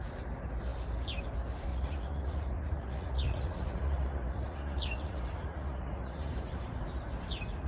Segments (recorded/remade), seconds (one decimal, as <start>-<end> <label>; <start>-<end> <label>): 0.0-1.7 recorded; 1.7-6.3 remade; 6.3-7.7 recorded